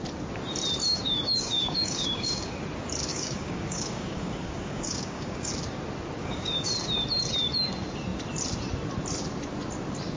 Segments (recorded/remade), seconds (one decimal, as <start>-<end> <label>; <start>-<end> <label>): 0.0-0.9 recorded; 0.9-2.6 remade; 2.6-3.1 recorded; 3.1-5.5 remade; 5.5-6.2 recorded; 6.2-6.7 remade; 6.7-10.2 recorded